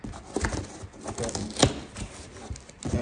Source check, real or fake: real